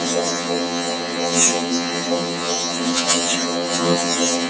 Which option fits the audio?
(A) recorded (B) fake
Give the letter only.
B